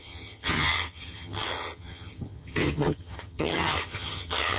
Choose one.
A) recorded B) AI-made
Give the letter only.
B